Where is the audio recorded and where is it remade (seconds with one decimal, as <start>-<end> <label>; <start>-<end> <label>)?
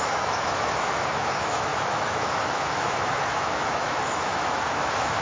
0.0-5.2 remade